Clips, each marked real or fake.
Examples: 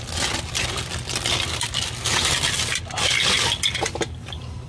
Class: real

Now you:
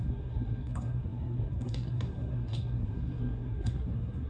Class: fake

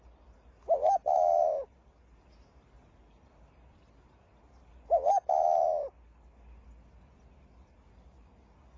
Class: real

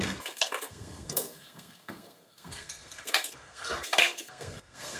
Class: fake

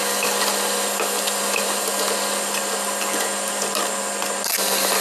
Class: real